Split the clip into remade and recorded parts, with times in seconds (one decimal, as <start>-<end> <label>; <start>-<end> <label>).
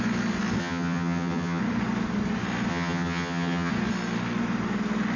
0.0-0.6 recorded; 0.6-1.6 remade; 1.6-2.7 recorded; 2.7-3.7 remade; 3.7-5.2 recorded